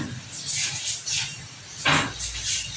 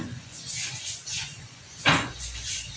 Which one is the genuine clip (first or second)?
first